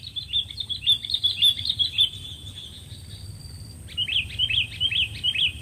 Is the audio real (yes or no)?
yes